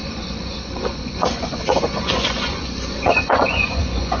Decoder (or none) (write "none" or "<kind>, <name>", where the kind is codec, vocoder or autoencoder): vocoder, Vocos